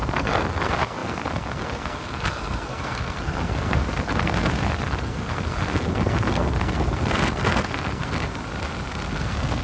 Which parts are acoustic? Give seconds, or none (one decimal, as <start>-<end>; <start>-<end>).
8.4-9.2